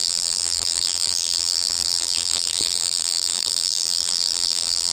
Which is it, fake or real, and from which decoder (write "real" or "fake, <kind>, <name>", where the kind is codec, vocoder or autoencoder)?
fake, vocoder, BigVGAN v2